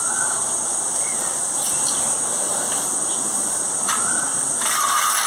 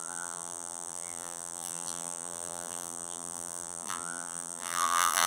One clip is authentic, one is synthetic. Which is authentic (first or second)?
first